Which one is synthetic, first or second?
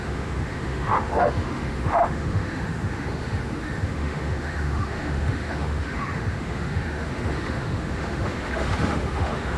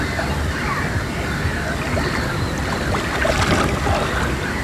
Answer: first